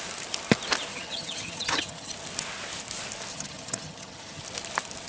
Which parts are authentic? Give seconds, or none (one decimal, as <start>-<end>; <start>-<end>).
0.0-0.9; 2.1-3.3; 4.4-5.1